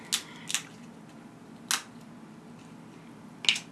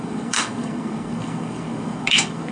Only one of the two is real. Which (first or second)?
first